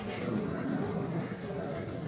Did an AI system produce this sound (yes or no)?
yes